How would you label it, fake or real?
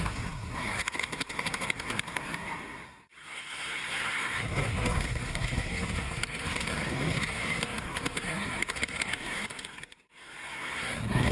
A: fake